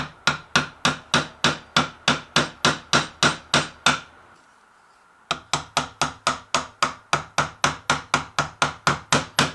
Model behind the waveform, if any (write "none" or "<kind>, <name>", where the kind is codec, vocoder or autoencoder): none